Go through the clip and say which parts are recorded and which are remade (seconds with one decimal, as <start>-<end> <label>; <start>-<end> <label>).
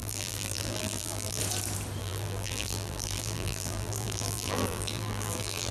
0.0-1.4 remade; 1.4-2.0 recorded; 2.0-5.7 remade